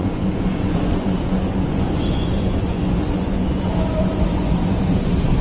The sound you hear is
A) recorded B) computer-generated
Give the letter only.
B